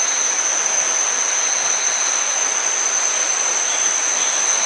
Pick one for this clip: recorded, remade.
recorded